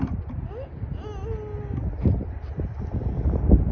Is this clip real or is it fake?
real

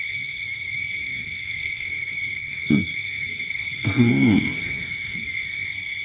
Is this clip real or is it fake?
fake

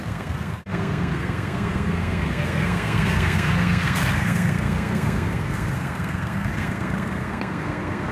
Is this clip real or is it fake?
fake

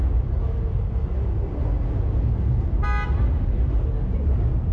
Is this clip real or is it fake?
real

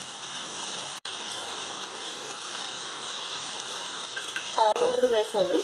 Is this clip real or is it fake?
fake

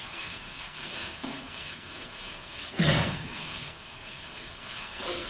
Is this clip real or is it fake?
fake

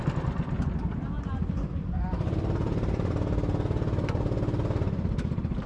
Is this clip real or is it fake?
real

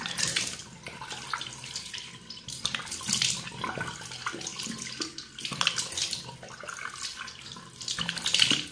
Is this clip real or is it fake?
real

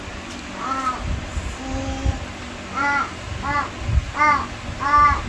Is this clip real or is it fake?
real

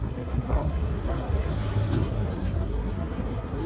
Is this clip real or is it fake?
fake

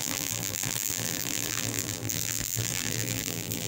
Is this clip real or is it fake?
fake